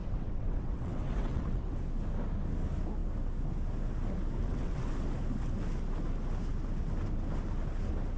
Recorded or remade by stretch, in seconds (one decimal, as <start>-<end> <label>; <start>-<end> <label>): 0.0-1.8 remade; 1.8-4.4 recorded; 4.4-4.9 remade; 4.9-8.2 recorded